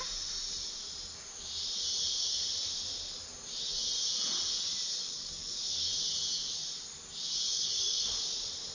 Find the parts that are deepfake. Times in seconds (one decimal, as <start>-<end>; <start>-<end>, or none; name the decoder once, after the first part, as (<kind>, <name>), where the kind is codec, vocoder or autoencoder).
5.0-5.9 (codec, DAC); 7.5-8.1